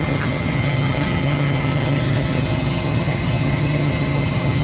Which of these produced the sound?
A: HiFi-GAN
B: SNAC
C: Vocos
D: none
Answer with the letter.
A